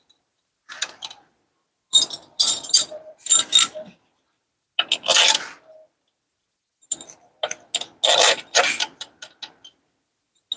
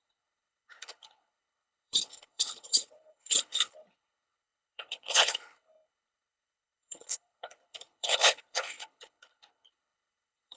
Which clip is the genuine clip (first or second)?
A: first